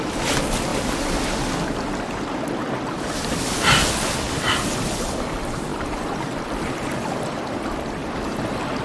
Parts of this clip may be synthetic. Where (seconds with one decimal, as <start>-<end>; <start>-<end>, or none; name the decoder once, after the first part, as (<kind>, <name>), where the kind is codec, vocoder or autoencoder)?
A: 0.0-0.7 (vocoder, BigVGAN v2); 3.9-8.8